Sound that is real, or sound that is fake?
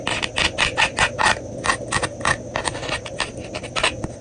real